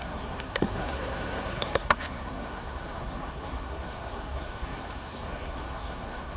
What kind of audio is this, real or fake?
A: fake